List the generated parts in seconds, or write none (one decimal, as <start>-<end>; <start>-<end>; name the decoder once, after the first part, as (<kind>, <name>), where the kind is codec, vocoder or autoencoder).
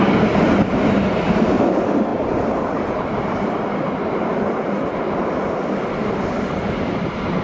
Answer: none